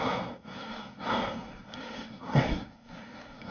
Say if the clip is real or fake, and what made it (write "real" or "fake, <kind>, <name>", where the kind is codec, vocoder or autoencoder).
fake, codec, SNAC